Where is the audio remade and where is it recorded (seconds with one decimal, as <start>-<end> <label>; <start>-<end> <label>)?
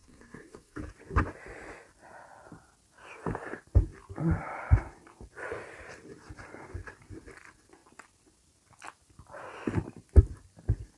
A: 0.0-0.8 remade; 0.8-11.0 recorded